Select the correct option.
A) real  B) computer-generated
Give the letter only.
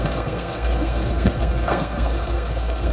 B